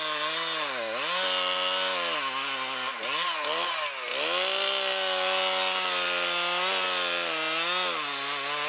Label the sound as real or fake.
real